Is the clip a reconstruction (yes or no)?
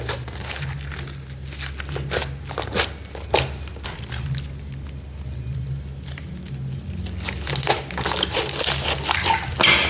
no